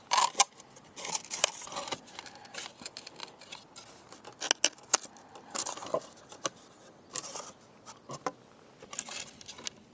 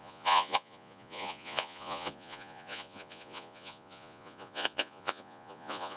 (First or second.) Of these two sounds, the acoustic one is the first